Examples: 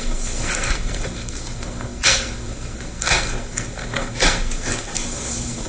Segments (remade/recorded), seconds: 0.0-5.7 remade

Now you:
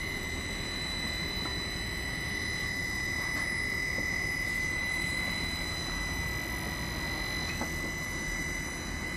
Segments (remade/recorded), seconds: 0.0-6.3 remade; 6.3-7.9 recorded; 7.9-9.2 remade

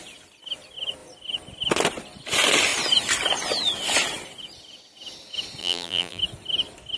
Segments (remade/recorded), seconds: 0.0-5.6 recorded; 5.6-6.2 remade; 6.2-7.0 recorded

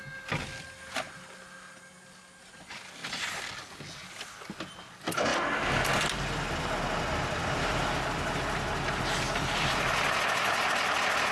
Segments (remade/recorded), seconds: 0.0-11.3 recorded